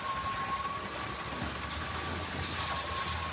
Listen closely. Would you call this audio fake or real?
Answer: real